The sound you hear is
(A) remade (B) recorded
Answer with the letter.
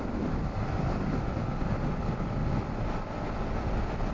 B